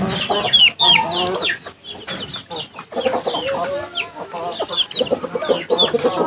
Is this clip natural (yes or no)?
yes